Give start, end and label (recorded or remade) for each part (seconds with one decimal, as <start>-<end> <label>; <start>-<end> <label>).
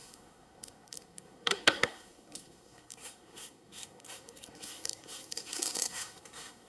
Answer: 0.0-6.7 remade